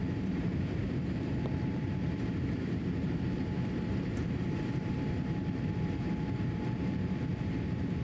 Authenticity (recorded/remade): remade